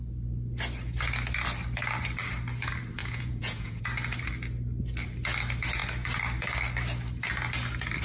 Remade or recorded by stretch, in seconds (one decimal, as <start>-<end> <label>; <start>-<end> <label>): 0.0-3.0 recorded; 3.0-3.8 remade; 3.8-8.0 recorded